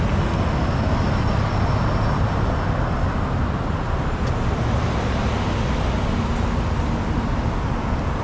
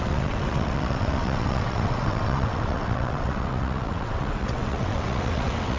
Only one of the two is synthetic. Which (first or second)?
second